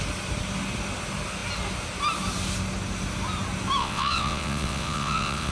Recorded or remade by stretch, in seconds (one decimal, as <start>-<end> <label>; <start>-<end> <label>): 0.0-3.8 recorded; 3.8-5.5 remade